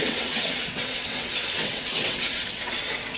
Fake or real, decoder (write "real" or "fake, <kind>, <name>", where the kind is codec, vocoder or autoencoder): fake, vocoder, WaveNeXt